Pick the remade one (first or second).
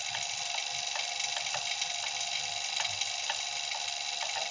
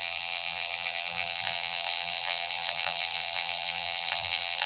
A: second